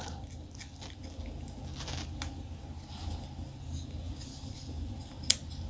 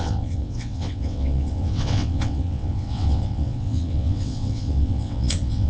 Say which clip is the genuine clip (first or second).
first